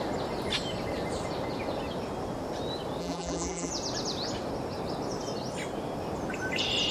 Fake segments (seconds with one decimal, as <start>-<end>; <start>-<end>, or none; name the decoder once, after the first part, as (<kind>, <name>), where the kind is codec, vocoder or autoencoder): 3.0-3.7 (vocoder, BigVGAN v2)